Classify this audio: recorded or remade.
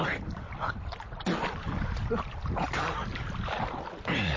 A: recorded